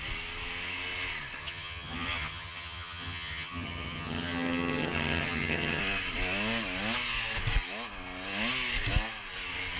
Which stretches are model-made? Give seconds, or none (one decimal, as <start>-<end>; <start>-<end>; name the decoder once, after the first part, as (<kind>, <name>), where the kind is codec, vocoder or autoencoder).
1.4-5.8 (vocoder, HiFi-GAN)